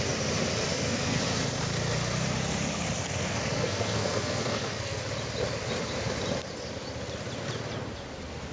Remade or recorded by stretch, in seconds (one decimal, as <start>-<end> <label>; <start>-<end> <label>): 0.0-0.7 recorded; 0.7-1.2 remade; 1.2-3.2 recorded; 3.2-5.0 remade; 5.0-8.5 recorded